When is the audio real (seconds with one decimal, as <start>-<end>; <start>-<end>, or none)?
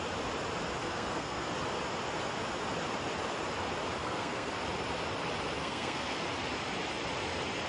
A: 0.0-0.8; 1.5-4.0; 4.5-5.6; 6.2-7.7